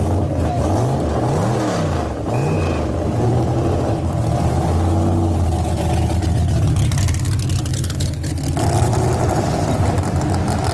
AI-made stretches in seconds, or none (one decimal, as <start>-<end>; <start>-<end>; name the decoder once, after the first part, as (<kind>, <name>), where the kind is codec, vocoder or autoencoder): 7.7-8.3 (codec, HILCodec)